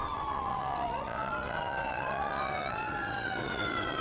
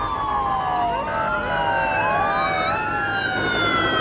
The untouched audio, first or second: second